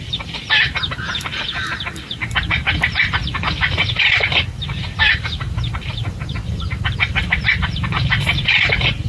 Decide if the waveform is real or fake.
fake